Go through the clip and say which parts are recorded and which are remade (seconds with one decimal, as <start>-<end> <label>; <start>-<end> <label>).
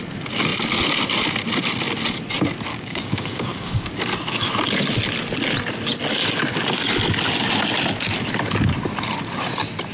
0.0-2.7 recorded; 2.7-4.0 remade; 4.0-9.9 recorded